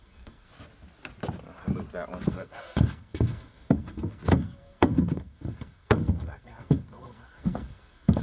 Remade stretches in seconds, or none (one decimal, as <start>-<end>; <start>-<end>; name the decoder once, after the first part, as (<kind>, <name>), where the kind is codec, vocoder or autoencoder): 0.0-0.5 (codec, SNAC); 2.3-8.2